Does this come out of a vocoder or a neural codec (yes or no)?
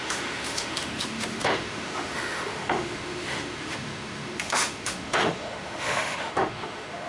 yes